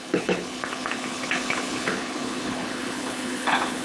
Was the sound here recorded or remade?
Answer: remade